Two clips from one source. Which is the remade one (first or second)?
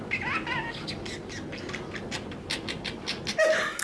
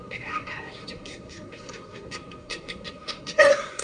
second